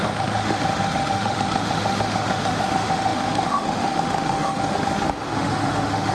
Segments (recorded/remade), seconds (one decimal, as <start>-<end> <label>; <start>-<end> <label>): 0.0-6.1 remade